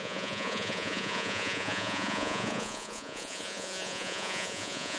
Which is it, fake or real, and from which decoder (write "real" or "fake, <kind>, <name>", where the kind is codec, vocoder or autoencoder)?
fake, vocoder, Vocos